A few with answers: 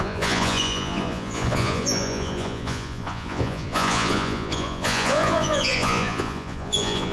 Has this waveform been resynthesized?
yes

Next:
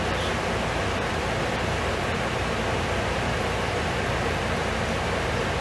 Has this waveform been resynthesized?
yes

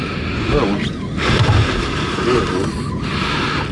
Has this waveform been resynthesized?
no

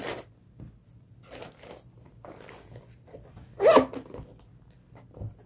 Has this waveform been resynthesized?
no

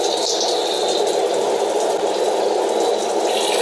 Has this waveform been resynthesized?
no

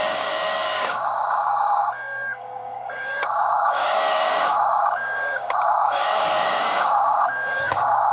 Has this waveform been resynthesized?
yes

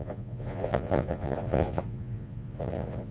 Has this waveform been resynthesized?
yes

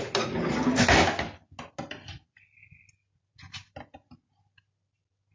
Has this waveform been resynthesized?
no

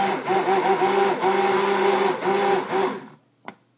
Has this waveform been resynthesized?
no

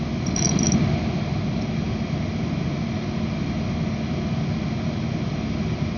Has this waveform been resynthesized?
no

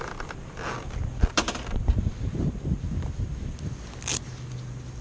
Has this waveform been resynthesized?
no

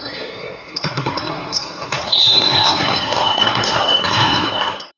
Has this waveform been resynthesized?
yes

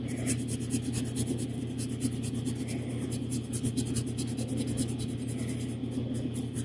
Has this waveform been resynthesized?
no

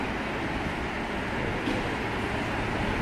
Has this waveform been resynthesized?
no